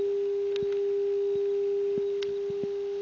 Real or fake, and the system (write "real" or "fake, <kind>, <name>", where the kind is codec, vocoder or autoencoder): real